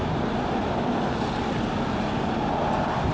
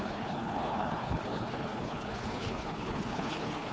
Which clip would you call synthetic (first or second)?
second